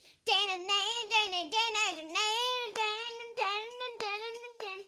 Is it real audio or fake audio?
fake